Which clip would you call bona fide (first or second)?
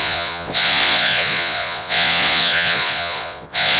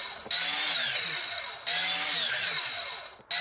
second